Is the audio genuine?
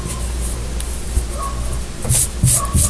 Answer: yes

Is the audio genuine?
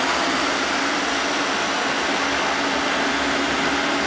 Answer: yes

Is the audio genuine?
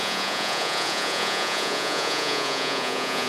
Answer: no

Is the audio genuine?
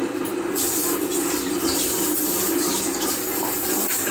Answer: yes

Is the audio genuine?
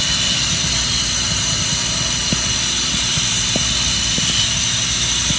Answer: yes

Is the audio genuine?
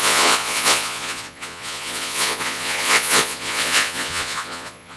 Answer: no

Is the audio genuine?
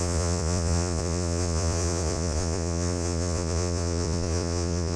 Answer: no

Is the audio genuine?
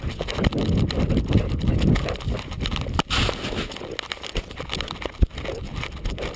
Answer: yes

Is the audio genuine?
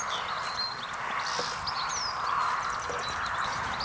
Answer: yes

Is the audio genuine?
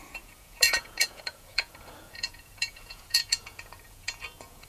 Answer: no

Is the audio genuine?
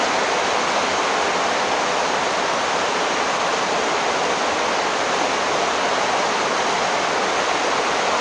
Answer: yes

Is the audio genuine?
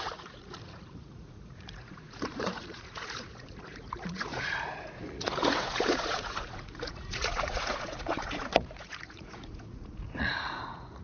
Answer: no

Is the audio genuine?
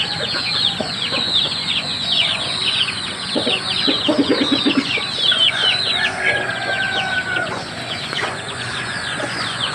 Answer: no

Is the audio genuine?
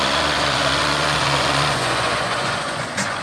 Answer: no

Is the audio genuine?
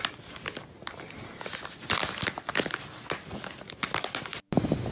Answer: yes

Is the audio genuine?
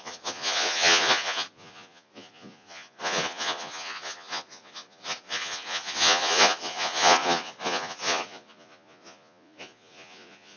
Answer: no